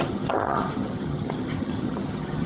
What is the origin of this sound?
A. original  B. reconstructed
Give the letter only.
B